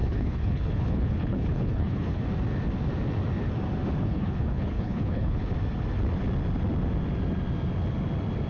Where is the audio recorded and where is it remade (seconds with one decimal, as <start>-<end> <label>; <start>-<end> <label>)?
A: 0.0-2.2 remade; 2.2-4.0 recorded; 4.0-5.4 remade; 5.4-8.5 recorded